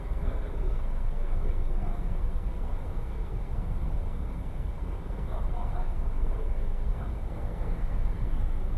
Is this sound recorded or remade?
remade